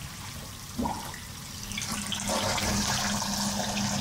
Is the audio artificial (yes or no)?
no